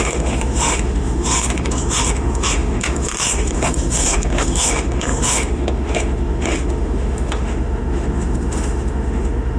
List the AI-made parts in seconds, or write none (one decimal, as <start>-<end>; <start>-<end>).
0.0-9.6